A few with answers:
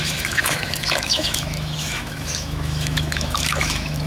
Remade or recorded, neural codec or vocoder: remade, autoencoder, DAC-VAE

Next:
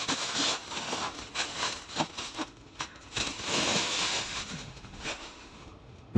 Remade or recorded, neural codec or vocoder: remade, autoencoder, DAC-VAE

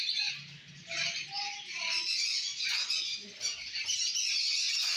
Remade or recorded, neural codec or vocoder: recorded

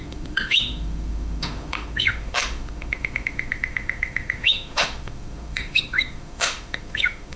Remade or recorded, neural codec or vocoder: remade, autoencoder, DAC-VAE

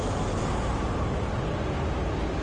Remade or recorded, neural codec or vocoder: recorded